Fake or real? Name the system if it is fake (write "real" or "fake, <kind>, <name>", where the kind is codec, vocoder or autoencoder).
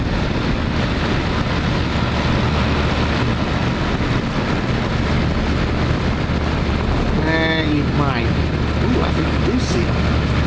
real